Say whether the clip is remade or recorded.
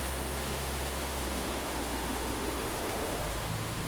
remade